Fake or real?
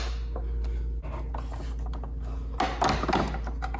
real